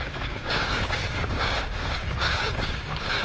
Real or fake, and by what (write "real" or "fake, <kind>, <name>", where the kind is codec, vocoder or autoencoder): fake, codec, DAC